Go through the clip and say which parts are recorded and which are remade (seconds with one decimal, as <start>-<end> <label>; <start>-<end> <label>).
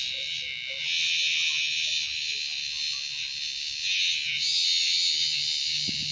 0.0-6.1 recorded